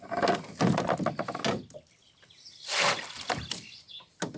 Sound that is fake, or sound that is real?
real